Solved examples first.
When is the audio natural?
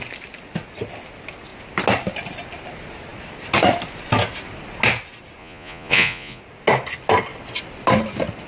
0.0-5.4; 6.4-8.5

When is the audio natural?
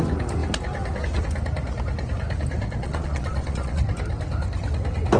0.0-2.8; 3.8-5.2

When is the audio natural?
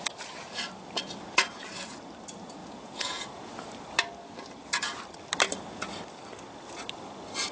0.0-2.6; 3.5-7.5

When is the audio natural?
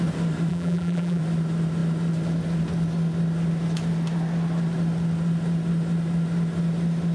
0.0-0.5; 1.2-7.1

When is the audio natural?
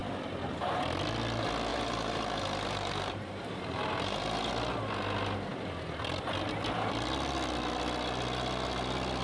0.0-1.7; 4.5-9.2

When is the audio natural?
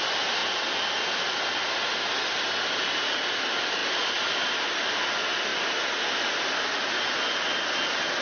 0.0-8.2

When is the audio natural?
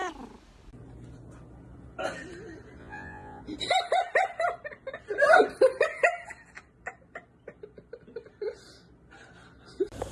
0.0-2.8; 3.4-10.1